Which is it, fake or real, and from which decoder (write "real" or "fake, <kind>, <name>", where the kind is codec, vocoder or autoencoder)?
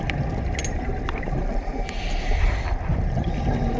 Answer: real